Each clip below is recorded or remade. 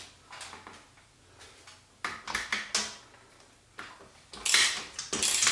recorded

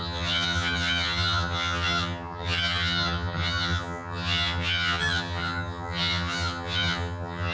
remade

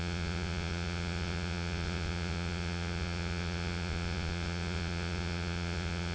remade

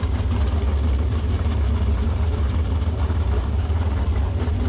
remade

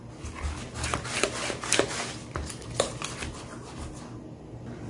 recorded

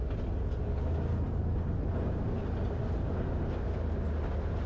recorded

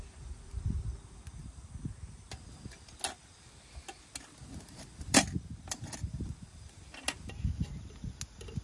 recorded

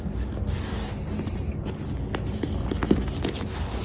recorded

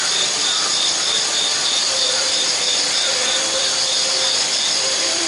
remade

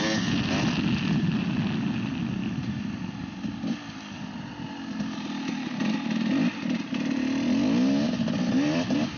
recorded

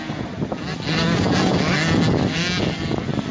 recorded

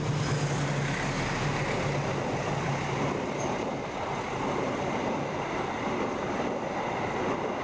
recorded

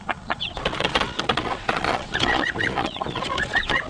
remade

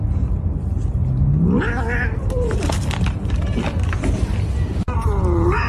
recorded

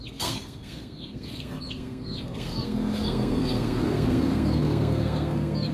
remade